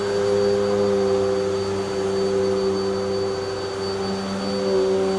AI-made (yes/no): no